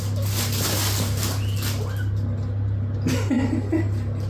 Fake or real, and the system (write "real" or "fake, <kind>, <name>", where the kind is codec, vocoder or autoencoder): real